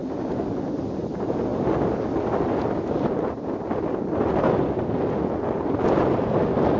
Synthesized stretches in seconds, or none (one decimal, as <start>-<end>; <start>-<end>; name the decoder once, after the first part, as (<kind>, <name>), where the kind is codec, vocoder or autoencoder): 1.5-4.7 (vocoder, BigVGAN v2)